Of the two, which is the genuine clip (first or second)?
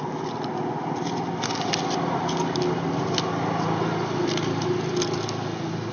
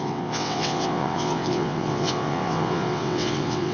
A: first